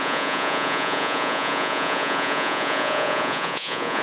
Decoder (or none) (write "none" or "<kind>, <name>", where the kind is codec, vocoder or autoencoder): vocoder, Vocos